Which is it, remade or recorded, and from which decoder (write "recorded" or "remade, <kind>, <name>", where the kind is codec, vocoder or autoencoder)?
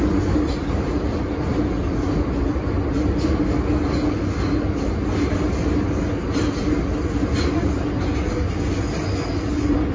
recorded